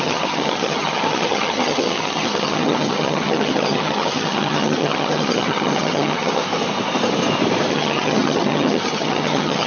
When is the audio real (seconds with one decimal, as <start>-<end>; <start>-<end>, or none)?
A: 6.4-7.7